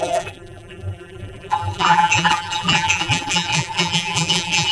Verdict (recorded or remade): remade